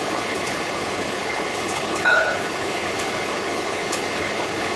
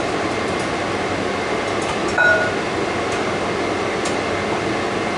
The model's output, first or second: first